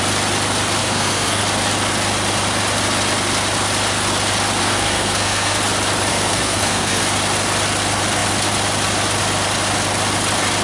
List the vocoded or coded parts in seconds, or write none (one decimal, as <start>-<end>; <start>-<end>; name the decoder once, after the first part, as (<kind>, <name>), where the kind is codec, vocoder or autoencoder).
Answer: 0.8-1.4 (codec, SNAC); 4.6-5.6; 6.1-7.0